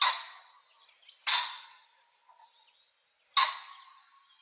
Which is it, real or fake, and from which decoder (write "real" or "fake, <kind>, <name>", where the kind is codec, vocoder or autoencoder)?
real